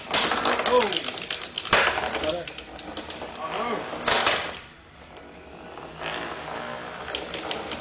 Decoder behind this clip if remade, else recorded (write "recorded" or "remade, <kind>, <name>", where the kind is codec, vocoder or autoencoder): recorded